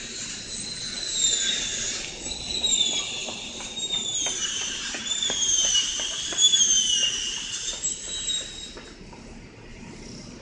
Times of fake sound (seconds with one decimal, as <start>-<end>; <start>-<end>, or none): 3.2-7.9; 9.7-10.4